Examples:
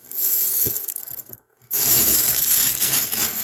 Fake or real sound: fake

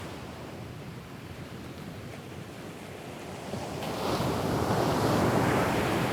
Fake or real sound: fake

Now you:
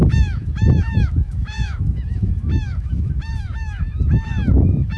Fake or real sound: fake